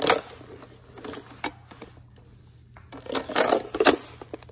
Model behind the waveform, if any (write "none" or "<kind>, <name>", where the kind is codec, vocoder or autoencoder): none